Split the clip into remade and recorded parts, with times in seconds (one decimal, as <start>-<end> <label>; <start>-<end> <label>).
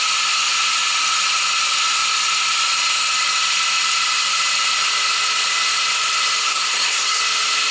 0.0-6.4 recorded; 6.4-7.2 remade; 7.2-7.7 recorded